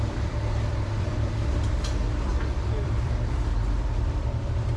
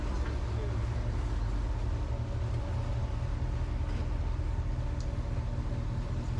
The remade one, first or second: first